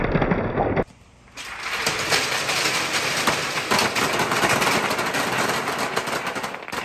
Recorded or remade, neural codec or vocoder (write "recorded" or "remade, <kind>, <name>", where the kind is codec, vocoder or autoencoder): recorded